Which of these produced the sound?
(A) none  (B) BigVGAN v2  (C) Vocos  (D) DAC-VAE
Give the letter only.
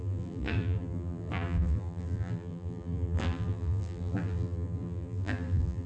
B